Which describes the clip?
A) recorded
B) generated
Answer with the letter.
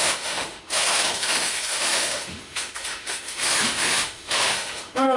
B